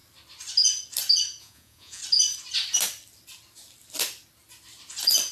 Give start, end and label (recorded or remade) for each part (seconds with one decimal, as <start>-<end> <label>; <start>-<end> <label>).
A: 0.0-1.4 recorded; 1.4-2.0 remade; 2.0-5.3 recorded